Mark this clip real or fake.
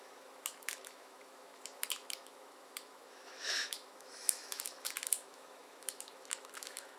fake